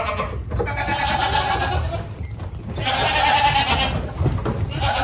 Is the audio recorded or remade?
recorded